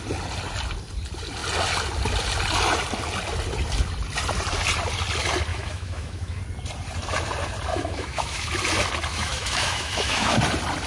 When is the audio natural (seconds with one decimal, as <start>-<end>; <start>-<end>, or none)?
0.0-5.5; 6.4-7.7; 8.5-9.1; 10.4-10.9